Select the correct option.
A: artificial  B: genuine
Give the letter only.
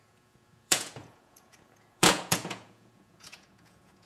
A